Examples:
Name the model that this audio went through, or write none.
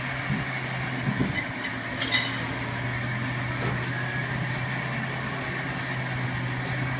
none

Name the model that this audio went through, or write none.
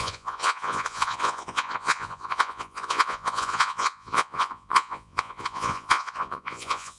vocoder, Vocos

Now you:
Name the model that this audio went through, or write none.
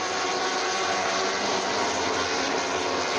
none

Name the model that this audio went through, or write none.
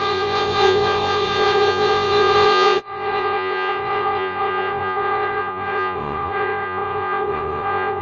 vocoder, Vocos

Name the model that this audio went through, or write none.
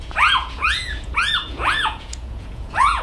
vocoder, Vocos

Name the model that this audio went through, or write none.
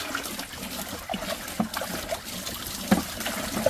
none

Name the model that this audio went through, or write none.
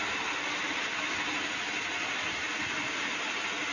none